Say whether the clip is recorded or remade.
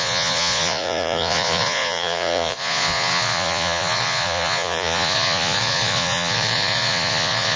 remade